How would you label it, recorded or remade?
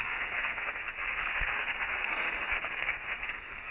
remade